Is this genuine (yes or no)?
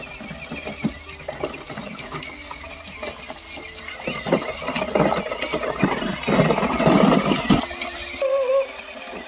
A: yes